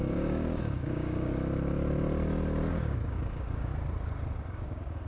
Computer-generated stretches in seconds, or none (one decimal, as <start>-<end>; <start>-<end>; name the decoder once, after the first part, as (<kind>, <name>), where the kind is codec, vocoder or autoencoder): 0.0-1.3 (codec, DAC); 2.7-3.7; 4.4-5.1